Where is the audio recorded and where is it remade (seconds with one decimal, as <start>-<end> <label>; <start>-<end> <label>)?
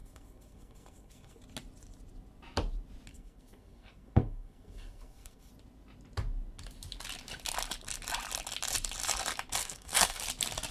0.0-1.4 remade; 1.4-3.1 recorded; 3.1-5.5 remade; 5.5-9.6 recorded; 9.6-10.2 remade; 10.2-10.7 recorded